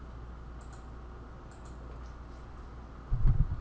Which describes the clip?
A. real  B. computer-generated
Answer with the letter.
A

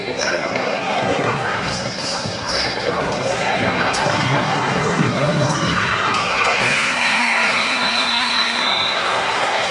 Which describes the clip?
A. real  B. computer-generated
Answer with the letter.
B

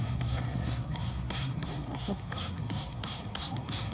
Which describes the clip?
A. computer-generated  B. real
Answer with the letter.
A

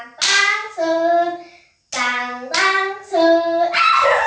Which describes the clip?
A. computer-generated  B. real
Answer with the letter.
B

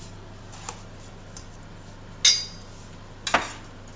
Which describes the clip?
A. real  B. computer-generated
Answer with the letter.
A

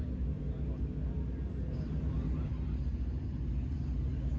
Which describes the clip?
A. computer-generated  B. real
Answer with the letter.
B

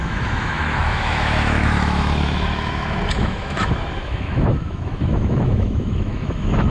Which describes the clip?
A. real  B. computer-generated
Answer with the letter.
B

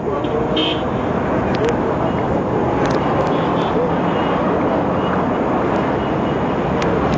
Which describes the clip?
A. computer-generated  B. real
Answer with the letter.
B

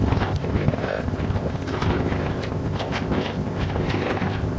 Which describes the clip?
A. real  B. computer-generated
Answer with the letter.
B